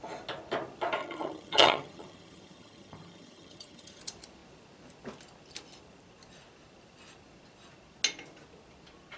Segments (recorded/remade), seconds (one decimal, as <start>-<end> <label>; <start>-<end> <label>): 0.0-1.0 recorded; 1.0-4.0 remade; 4.0-9.2 recorded